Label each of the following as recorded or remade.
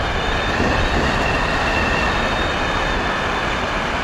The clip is recorded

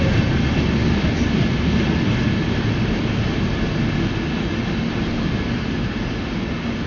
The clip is recorded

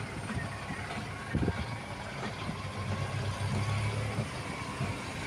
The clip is recorded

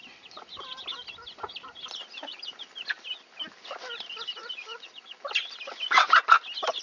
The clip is recorded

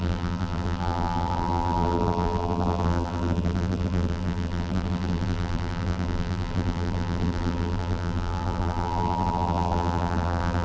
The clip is remade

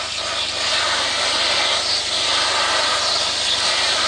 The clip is recorded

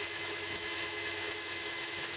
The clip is remade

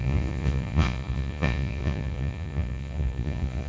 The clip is remade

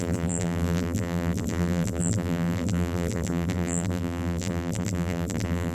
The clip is remade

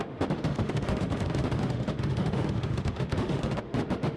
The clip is remade